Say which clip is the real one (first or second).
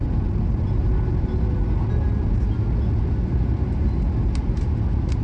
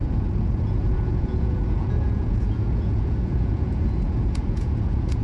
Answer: first